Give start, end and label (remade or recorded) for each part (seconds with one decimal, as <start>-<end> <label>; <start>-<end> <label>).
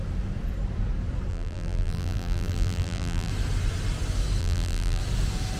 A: 0.0-1.3 recorded; 1.3-3.3 remade; 3.3-4.4 recorded; 4.4-5.0 remade; 5.0-5.6 recorded